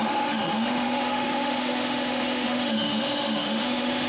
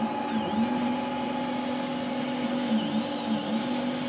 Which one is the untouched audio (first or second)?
second